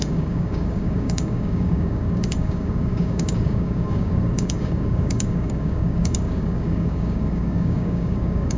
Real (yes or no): no